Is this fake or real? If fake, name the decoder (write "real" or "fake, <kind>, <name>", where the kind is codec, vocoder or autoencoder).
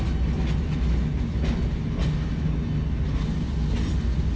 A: real